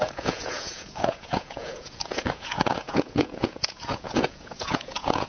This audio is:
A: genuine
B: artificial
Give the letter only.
B